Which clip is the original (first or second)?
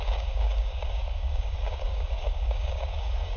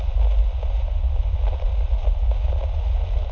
second